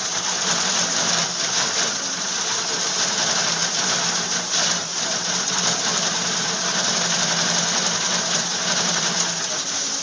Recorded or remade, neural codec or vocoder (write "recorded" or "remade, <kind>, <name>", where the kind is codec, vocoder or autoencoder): remade, vocoder, BigVGAN v2